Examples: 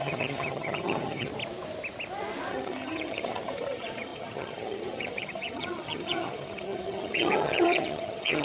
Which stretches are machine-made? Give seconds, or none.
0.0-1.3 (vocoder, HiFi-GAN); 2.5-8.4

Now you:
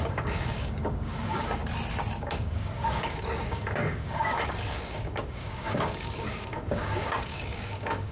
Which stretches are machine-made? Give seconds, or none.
0.0-1.6 (codec, DAC); 2.2-8.1

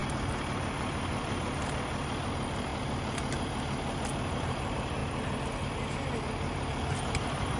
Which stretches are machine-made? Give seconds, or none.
2.3-2.7 (vocoder, BigVGAN v2); 4.4-5.0

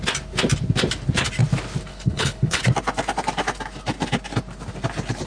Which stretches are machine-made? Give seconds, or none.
1.9-2.6 (codec, HILCodec)

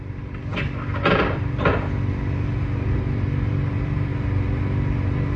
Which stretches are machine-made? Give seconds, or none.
0.0-0.5 (vocoder, BigVGAN v2); 1.1-4.1; 5.0-5.4

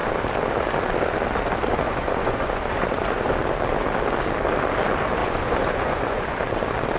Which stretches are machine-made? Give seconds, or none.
1.7-3.3 (vocoder, Vocos); 5.2-6.4